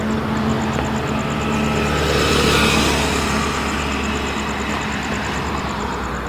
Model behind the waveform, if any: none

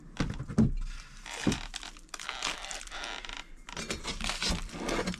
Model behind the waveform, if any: none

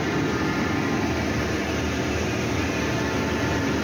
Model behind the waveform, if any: none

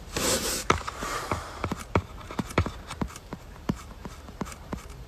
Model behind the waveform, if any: vocoder, BigVGAN v2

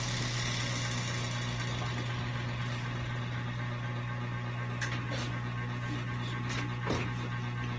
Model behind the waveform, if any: none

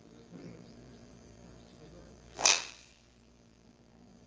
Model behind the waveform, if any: vocoder, BigVGAN v2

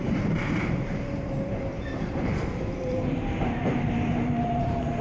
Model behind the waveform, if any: vocoder, BigVGAN v2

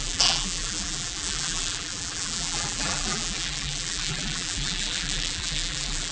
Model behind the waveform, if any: vocoder, BigVGAN v2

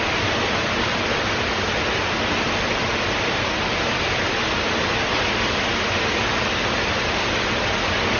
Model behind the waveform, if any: none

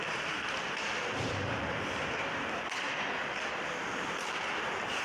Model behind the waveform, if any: vocoder, BigVGAN v2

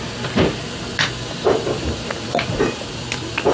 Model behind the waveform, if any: vocoder, BigVGAN v2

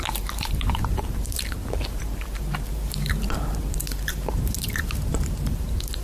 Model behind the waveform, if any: vocoder, BigVGAN v2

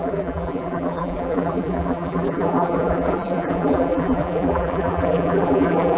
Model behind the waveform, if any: vocoder, BigVGAN v2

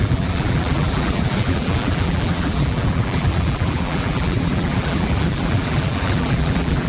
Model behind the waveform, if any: vocoder, BigVGAN v2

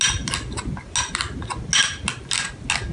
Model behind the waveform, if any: none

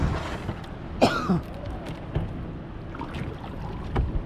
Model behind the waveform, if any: none